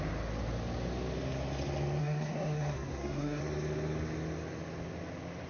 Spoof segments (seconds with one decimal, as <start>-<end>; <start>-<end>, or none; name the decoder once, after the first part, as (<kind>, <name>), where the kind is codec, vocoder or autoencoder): 2.0-3.4 (codec, SNAC)